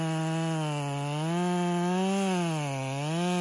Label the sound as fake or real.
real